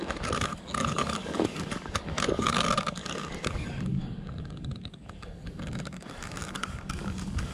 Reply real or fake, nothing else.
fake